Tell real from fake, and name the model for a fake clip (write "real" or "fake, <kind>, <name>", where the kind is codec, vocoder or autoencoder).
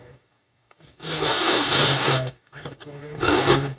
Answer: fake, codec, DAC